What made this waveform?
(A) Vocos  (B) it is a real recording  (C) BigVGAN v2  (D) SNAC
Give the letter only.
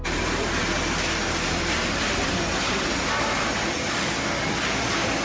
C